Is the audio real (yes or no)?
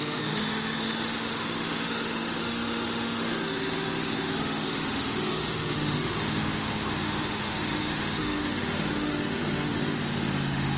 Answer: no